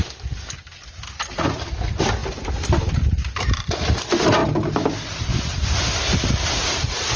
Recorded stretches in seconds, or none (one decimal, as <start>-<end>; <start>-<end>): 0.0-7.2